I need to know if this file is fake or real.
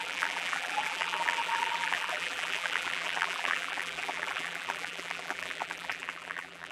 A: fake